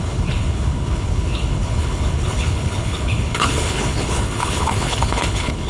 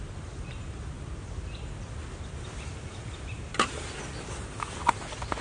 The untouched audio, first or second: second